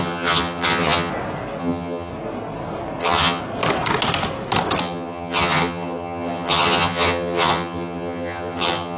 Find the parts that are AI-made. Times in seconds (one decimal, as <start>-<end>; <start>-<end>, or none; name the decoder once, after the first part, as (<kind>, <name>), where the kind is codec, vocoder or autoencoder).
0.0-1.1 (vocoder, HiFi-GAN); 1.6-2.1; 3.0-3.4; 4.8-9.0